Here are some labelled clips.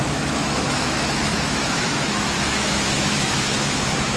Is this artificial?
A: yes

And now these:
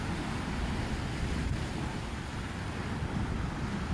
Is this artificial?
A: no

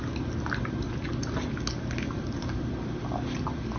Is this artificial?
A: no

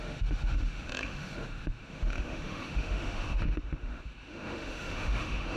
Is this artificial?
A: yes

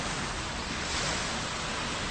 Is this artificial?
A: no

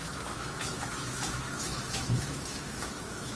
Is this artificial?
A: yes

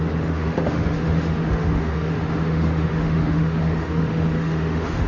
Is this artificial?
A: yes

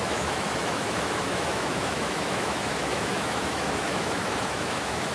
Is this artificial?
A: yes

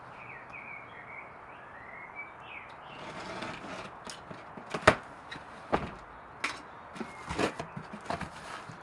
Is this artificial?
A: no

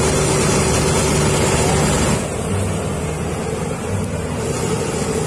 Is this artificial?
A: no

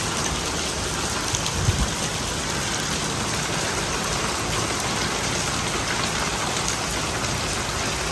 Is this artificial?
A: no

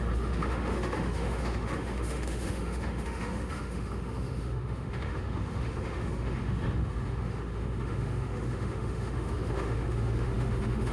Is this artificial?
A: yes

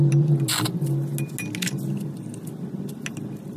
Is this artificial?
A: no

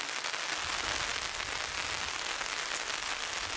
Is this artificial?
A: no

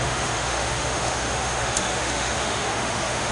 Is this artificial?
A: yes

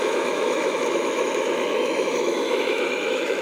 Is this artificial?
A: yes